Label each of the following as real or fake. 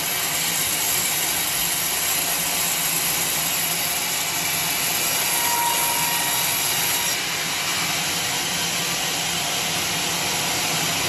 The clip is real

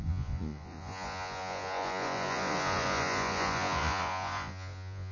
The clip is fake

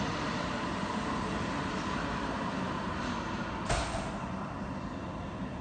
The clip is fake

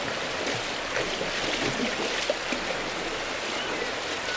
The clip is real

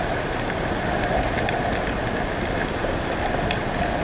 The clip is real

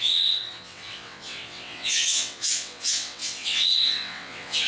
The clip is fake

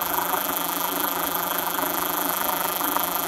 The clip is fake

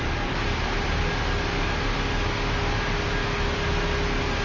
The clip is real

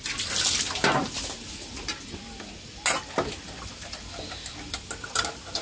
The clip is real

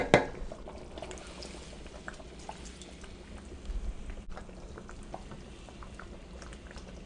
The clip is real